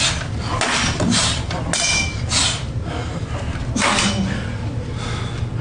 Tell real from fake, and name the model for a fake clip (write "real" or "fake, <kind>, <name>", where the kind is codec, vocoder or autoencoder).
real